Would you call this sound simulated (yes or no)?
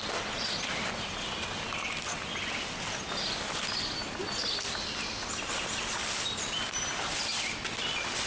no